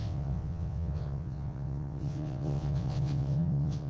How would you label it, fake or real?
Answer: fake